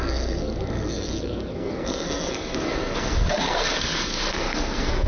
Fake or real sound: fake